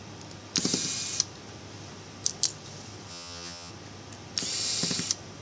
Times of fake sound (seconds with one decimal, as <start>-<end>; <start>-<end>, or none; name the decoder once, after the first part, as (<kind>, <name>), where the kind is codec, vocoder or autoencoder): 3.1-3.7 (vocoder, HiFi-GAN)